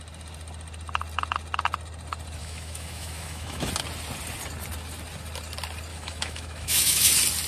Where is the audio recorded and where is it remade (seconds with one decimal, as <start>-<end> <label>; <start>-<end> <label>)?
0.0-2.4 recorded; 2.4-3.7 remade; 3.7-5.9 recorded; 5.9-7.1 remade; 7.1-7.5 recorded